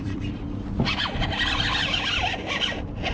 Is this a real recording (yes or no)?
no